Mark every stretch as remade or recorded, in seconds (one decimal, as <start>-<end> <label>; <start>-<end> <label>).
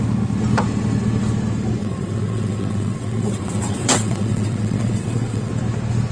0.0-1.8 recorded; 1.8-5.5 remade; 5.5-6.1 recorded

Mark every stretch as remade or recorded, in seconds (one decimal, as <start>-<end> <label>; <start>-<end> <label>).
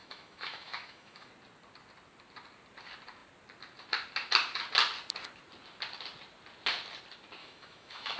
0.0-1.3 remade; 1.3-7.4 recorded; 7.4-8.2 remade